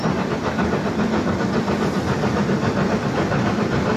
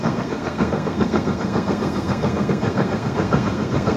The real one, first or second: first